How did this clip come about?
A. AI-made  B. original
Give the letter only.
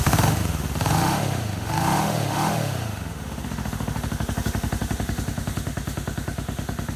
A